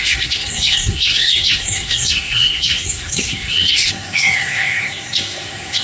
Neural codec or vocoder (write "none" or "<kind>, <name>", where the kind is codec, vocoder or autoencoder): codec, SNAC